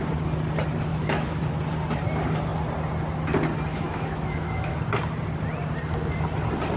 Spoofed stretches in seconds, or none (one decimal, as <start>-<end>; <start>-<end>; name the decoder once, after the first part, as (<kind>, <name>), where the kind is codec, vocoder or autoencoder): 0.9-1.4 (autoencoder, DAC-VAE); 3.7-4.8